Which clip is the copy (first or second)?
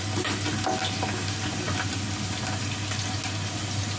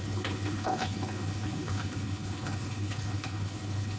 second